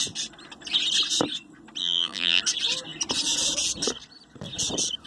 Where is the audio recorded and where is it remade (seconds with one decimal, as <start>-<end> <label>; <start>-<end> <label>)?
0.0-1.8 recorded; 1.8-2.4 remade; 2.4-5.1 recorded